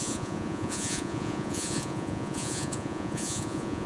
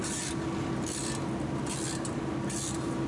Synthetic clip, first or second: first